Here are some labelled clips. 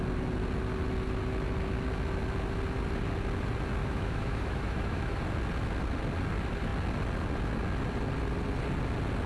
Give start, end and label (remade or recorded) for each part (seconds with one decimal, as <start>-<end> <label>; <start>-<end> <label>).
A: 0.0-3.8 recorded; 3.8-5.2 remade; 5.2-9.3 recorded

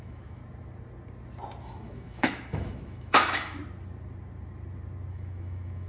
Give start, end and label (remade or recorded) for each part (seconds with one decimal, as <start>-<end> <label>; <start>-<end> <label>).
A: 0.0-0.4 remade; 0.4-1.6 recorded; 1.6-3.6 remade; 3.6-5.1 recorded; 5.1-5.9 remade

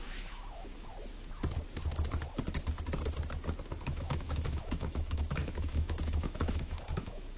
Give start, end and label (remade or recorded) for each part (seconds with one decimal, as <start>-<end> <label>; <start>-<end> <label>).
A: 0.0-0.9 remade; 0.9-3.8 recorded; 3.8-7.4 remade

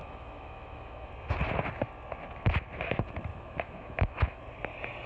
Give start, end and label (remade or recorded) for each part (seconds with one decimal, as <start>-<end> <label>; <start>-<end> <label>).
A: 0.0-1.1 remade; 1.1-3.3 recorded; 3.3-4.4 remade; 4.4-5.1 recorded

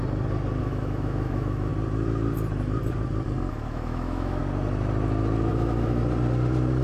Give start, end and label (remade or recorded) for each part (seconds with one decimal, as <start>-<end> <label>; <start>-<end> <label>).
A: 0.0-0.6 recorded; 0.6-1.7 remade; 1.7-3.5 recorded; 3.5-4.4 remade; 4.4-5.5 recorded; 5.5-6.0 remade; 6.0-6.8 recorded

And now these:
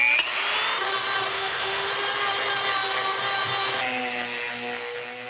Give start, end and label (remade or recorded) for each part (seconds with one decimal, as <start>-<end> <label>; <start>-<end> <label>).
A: 0.0-1.3 recorded; 1.3-1.9 remade; 1.9-5.3 recorded

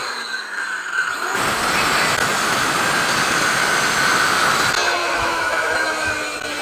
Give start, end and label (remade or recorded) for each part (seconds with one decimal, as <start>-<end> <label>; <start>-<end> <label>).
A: 0.0-5.0 recorded; 5.0-6.1 remade; 6.1-6.6 recorded